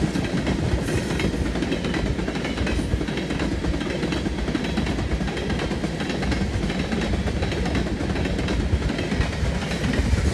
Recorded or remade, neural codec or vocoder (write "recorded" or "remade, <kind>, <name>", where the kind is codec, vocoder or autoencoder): recorded